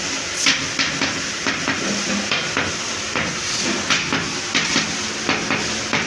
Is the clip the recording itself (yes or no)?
yes